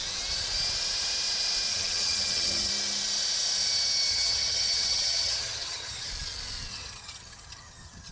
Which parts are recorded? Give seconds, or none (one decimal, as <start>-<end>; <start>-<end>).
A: 0.0-1.7; 2.7-4.1; 6.1-6.7